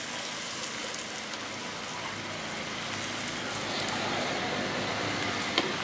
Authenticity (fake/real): real